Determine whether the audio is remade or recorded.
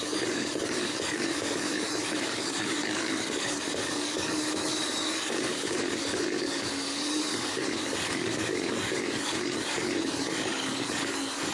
remade